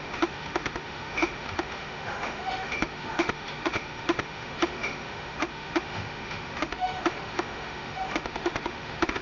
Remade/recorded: remade